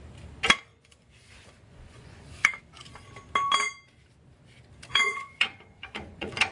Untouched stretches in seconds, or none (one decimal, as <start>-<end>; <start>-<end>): 0.0-0.7; 2.6-4.9